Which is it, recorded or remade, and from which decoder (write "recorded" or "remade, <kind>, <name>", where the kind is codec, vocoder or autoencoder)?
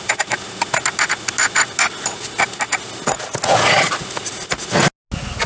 recorded